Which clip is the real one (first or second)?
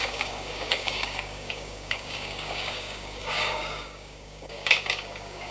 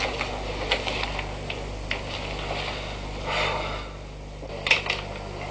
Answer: second